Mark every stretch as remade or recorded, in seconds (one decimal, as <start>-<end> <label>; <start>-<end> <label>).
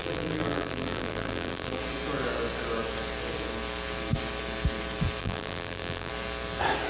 0.0-1.8 remade; 1.8-5.2 recorded; 5.2-6.1 remade; 6.1-6.9 recorded